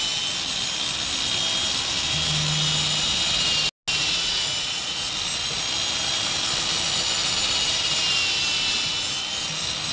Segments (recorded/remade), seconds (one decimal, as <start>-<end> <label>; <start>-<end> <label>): 0.0-4.0 recorded; 4.0-5.1 remade; 5.1-9.9 recorded